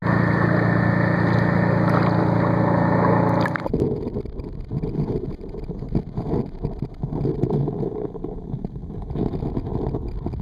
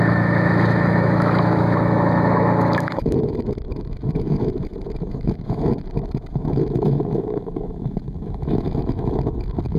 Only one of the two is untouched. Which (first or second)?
first